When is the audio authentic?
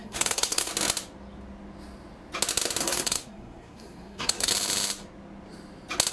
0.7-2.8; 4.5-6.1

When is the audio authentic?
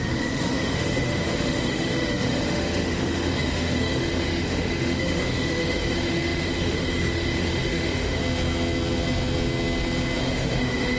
8.2-10.2